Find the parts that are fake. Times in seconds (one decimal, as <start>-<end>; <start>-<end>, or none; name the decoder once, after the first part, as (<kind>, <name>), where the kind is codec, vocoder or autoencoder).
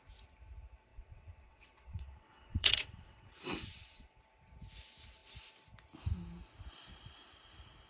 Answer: 0.9-4.2 (vocoder, WaveNeXt)